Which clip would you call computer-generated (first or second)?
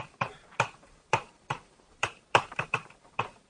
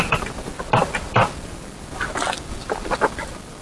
first